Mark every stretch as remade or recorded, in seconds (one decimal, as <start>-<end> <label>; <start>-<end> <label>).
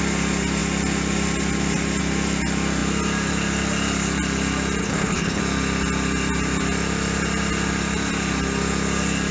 0.0-4.8 recorded; 4.8-5.4 remade; 5.4-9.3 recorded